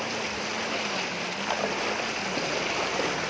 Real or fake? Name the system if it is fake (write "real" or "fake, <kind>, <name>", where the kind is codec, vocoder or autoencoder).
real